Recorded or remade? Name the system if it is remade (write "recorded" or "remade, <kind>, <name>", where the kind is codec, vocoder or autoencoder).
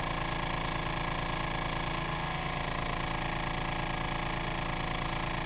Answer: recorded